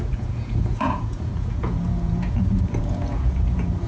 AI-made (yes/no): yes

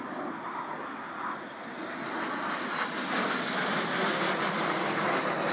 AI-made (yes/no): no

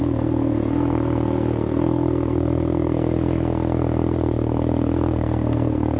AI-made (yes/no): yes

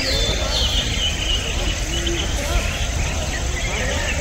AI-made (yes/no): no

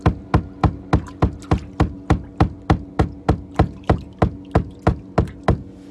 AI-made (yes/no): no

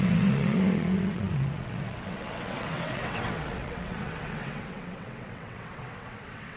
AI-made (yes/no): yes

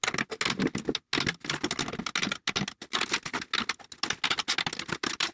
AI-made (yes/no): no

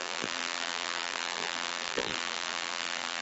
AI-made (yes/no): yes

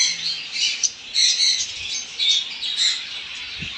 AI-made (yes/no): no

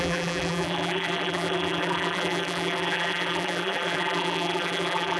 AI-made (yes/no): yes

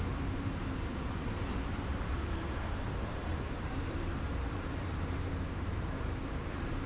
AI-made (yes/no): yes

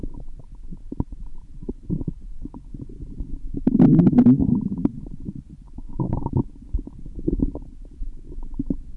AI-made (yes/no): no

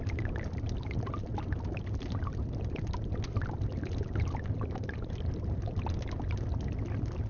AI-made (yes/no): no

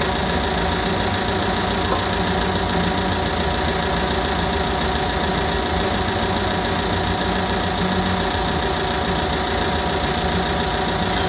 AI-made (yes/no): no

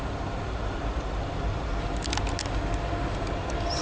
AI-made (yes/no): no